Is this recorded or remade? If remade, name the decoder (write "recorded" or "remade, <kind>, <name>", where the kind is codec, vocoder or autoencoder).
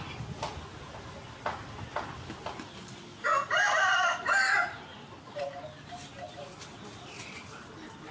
recorded